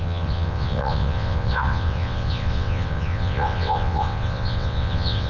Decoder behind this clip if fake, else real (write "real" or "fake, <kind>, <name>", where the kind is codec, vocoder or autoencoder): fake, vocoder, WaveNeXt